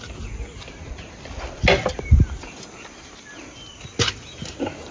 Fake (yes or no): no